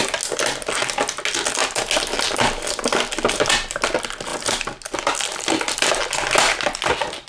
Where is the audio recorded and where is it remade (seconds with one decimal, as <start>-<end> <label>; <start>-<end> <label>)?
0.0-7.3 recorded